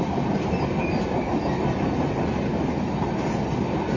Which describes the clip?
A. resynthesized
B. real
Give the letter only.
B